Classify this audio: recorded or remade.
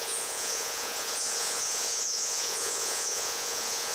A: remade